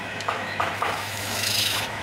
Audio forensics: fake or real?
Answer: fake